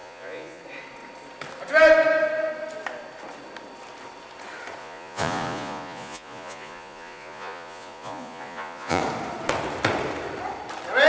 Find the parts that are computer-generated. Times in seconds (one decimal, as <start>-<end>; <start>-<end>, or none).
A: 0.0-0.6; 4.8-9.0